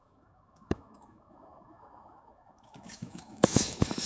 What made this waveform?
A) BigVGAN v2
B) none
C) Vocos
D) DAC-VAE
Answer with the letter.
D